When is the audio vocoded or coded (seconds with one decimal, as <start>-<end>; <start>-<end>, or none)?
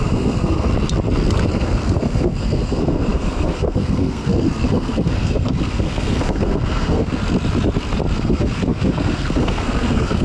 0.0-0.7; 1.5-7.2; 8.2-10.2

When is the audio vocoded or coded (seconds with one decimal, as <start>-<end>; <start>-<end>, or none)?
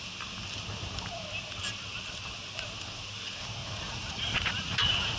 3.6-5.2